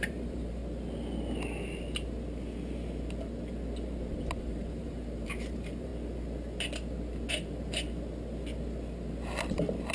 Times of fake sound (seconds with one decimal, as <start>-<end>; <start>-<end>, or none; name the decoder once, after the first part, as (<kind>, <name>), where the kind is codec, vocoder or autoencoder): 0.0-0.6 (vocoder, BigVGAN v2); 4.4-5.9